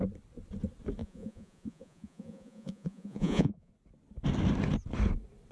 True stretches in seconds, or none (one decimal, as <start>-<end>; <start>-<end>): 0.0-1.0; 3.7-5.5